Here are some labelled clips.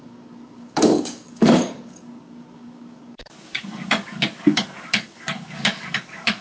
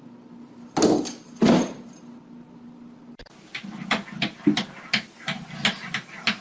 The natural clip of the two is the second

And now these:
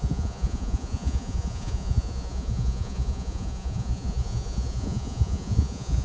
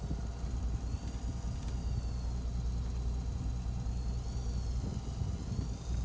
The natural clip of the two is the second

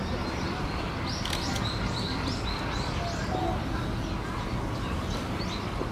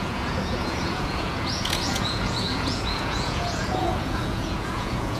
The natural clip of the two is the first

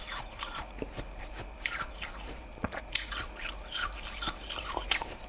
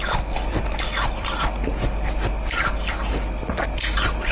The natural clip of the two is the second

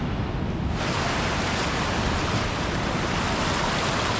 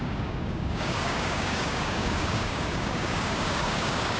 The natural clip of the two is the first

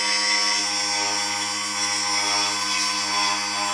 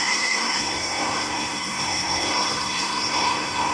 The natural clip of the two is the first